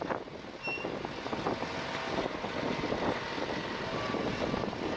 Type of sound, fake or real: real